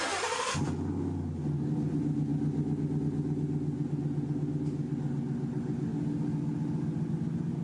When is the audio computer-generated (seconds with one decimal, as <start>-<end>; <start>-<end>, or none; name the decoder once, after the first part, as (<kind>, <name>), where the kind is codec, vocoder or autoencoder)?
none